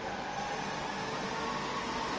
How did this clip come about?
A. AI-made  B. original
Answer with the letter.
B